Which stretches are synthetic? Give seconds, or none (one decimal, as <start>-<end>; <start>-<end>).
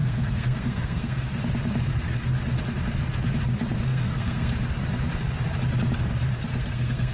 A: 0.0-1.4; 3.9-4.5; 6.5-7.1